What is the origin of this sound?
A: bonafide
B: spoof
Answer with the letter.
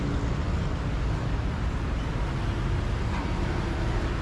A